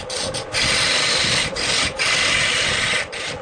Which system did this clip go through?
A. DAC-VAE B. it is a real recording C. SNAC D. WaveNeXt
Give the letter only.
B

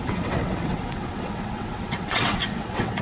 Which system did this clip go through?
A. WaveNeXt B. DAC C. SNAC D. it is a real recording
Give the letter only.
A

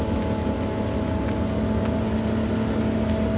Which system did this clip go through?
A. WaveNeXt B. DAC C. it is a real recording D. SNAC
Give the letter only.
C